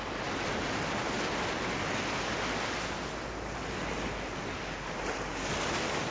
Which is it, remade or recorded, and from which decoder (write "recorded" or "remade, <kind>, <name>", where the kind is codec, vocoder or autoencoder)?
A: recorded